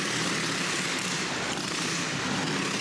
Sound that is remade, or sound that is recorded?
recorded